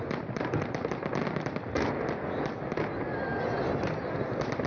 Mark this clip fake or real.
real